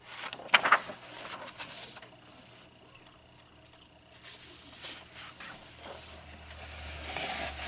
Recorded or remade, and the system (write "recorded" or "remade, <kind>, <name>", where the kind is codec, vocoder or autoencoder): recorded